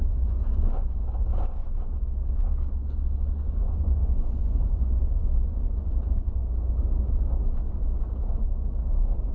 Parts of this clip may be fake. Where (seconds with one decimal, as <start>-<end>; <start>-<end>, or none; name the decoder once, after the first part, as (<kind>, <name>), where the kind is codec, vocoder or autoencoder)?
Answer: 0.0-1.0 (vocoder, Vocos); 3.6-6.4